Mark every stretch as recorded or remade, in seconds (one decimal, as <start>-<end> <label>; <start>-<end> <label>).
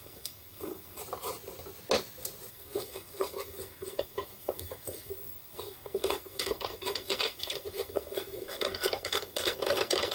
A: 0.0-1.0 remade; 1.0-2.5 recorded; 2.5-10.1 remade